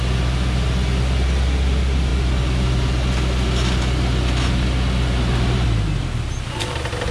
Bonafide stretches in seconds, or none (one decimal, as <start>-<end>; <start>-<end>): 0.0-7.1